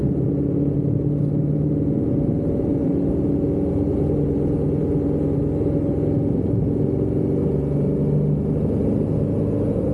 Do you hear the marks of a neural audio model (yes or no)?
no